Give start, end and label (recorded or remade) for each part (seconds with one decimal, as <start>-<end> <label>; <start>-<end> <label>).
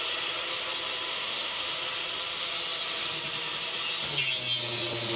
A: 0.0-1.1 recorded; 1.1-1.6 remade; 1.6-5.2 recorded